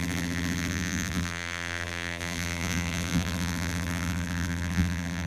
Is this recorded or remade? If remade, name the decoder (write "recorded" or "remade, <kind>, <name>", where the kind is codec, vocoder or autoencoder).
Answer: remade, vocoder, BigVGAN v2